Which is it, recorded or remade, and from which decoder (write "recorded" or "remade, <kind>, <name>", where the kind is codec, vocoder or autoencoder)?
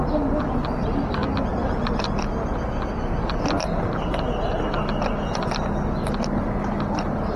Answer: recorded